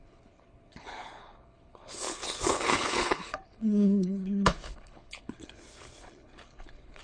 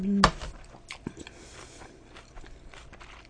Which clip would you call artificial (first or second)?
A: first